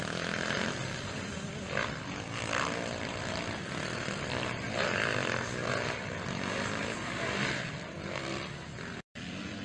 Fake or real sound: fake